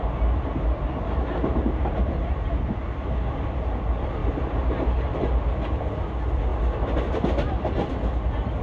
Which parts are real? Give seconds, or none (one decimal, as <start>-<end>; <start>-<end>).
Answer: 0.0-8.6